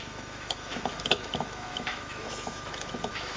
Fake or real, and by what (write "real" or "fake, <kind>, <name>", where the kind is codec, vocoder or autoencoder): fake, autoencoder, DAC-VAE